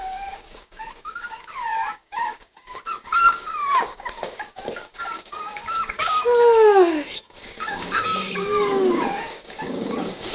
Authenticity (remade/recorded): remade